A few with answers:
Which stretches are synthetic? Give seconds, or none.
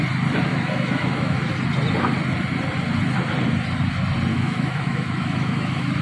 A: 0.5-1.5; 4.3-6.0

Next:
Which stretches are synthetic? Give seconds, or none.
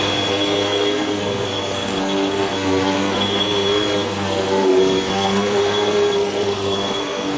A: 0.0-7.4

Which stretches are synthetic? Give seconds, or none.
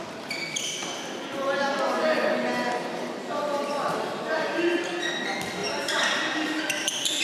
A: 5.6-7.2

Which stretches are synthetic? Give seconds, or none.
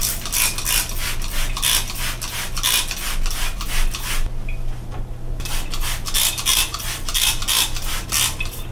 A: 6.5-7.4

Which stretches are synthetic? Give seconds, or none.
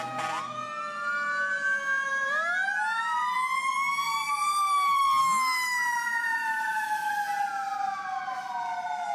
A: 5.2-7.1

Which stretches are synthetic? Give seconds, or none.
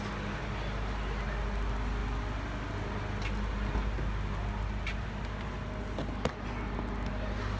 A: none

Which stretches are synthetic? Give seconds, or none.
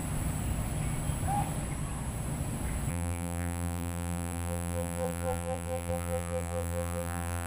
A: 2.9-7.5